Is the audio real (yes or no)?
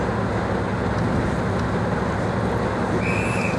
yes